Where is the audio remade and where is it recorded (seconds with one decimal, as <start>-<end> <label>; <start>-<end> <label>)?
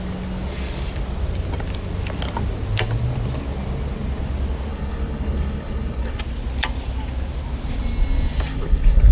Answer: 0.0-4.7 recorded; 4.7-6.2 remade; 6.2-8.5 recorded; 8.5-9.1 remade